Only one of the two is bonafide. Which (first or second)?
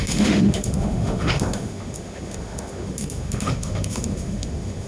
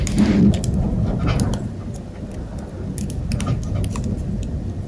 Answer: second